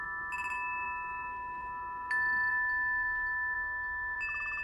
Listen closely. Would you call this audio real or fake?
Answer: real